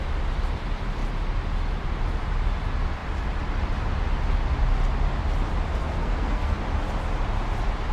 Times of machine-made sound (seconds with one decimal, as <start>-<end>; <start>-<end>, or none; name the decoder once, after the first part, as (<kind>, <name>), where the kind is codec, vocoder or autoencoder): 5.7-6.6 (codec, SNAC)